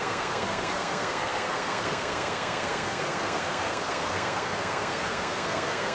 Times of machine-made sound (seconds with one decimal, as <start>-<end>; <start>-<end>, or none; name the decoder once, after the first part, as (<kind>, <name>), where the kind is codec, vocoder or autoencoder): 0.0-5.9 (codec, SNAC)